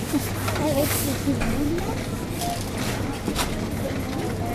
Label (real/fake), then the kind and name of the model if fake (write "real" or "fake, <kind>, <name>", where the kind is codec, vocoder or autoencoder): real